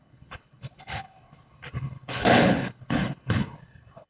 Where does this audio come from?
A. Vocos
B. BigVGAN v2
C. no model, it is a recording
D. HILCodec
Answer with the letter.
D